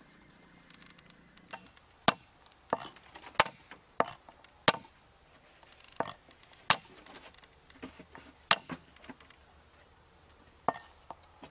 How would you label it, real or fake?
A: real